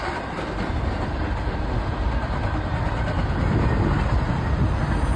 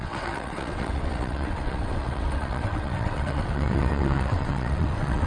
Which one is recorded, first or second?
first